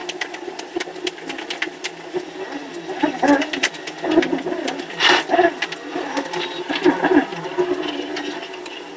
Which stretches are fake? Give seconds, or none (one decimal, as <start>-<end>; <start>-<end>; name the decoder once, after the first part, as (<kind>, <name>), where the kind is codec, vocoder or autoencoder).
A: none